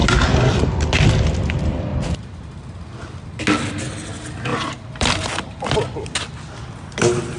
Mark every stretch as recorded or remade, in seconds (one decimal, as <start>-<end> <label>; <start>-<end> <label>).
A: 0.0-1.9 recorded; 1.9-2.4 remade; 2.4-4.5 recorded; 4.5-5.3 remade; 5.3-7.4 recorded